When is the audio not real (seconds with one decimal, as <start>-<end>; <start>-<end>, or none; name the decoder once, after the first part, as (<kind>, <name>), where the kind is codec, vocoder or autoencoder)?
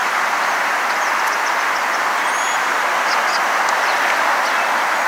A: none